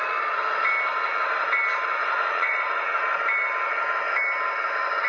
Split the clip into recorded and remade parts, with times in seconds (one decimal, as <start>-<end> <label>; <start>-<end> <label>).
0.0-2.0 recorded; 2.0-3.0 remade; 3.0-5.1 recorded